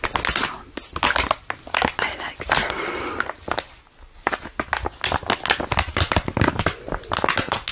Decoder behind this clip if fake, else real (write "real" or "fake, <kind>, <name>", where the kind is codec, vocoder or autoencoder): real